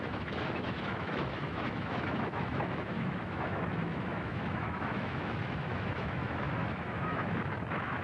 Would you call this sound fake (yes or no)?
yes